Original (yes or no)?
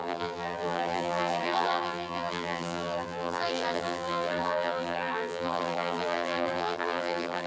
no